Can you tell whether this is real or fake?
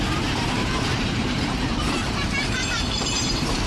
fake